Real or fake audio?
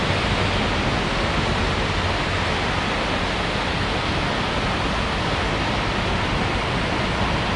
real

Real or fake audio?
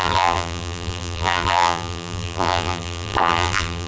fake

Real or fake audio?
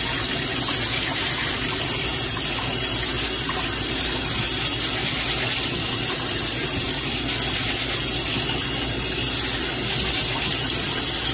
real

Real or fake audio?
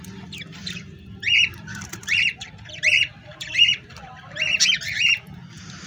fake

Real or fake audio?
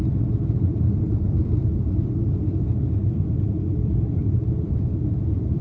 fake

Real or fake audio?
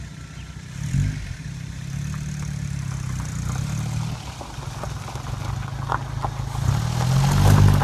real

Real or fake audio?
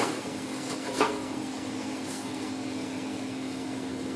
fake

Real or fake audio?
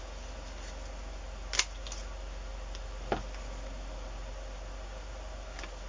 real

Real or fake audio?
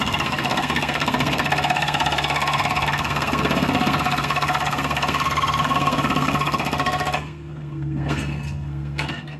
fake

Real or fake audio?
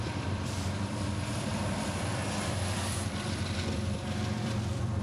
fake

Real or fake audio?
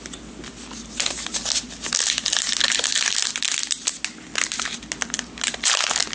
real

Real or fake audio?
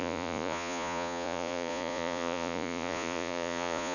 fake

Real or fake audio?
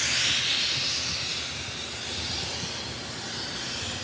real